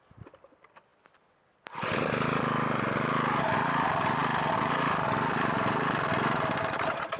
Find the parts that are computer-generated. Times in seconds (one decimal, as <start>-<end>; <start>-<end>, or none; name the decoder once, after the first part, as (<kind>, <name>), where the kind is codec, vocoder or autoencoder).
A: 0.0-0.9 (vocoder, BigVGAN v2); 3.4-7.2